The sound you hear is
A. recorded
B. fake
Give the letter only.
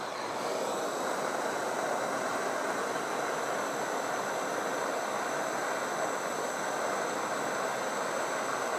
A